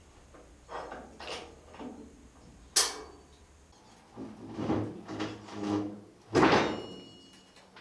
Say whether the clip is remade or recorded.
recorded